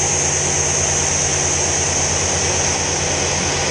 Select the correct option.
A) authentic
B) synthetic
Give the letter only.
A